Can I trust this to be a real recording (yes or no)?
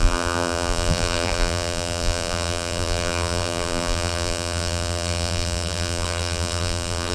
no